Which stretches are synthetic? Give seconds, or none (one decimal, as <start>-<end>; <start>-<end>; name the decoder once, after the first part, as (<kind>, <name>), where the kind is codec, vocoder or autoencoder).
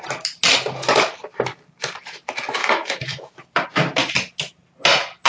2.6-3.3 (autoencoder, DAC-VAE)